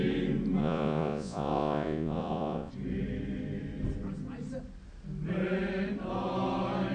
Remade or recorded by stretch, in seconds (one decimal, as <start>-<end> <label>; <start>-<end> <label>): 0.0-0.6 recorded; 0.6-2.7 remade; 2.7-6.9 recorded